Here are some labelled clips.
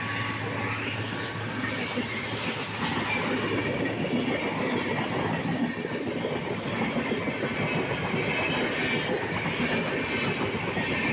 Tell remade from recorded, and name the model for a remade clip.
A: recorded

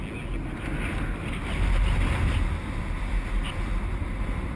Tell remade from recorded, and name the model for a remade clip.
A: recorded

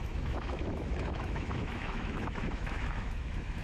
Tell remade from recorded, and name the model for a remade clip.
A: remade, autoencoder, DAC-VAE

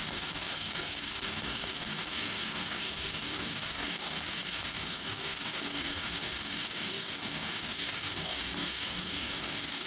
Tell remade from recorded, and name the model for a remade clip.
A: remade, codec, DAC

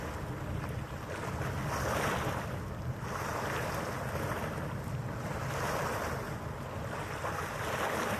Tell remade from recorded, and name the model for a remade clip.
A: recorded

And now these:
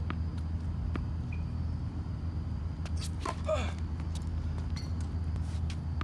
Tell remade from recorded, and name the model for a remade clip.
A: recorded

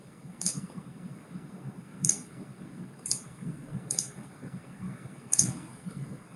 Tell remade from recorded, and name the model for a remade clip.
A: remade, codec, SNAC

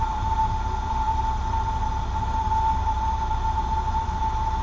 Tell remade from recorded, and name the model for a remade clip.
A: remade, vocoder, BigVGAN v2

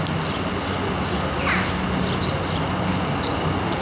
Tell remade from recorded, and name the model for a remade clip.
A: recorded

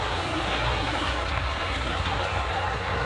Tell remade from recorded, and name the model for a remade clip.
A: remade, codec, SNAC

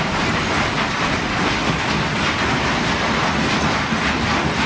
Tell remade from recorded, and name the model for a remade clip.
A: remade, vocoder, BigVGAN v2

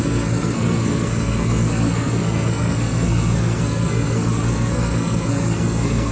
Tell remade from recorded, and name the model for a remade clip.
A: remade, codec, SNAC